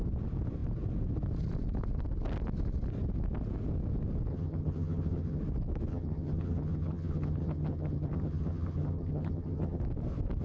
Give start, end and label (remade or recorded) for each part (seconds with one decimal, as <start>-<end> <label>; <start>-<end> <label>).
0.0-4.3 recorded; 4.3-5.4 remade; 5.4-5.9 recorded; 5.9-9.8 remade; 9.8-10.4 recorded